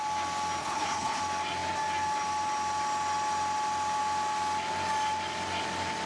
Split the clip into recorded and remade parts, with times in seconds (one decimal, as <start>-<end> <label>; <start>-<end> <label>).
0.0-0.6 recorded; 0.6-1.2 remade; 1.2-6.1 recorded